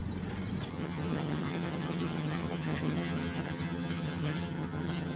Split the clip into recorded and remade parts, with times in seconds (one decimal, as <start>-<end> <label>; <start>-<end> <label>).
0.0-0.7 recorded; 0.7-5.2 remade